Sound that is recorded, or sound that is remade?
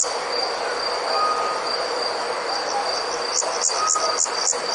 recorded